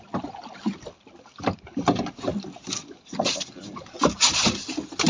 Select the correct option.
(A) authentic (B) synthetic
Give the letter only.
A